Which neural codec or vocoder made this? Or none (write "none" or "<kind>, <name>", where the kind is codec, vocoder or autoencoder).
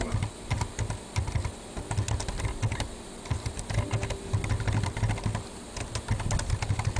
none